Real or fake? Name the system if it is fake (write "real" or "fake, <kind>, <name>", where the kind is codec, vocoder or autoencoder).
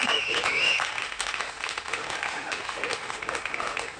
fake, autoencoder, DAC-VAE